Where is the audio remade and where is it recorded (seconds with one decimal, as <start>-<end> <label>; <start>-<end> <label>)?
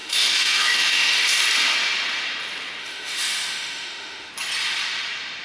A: 0.0-1.4 remade; 1.4-2.8 recorded; 2.8-4.3 remade; 4.3-5.4 recorded